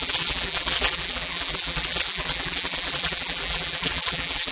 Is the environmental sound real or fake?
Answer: fake